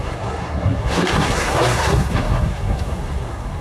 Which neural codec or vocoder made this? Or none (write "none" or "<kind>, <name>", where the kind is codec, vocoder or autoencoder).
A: codec, SNAC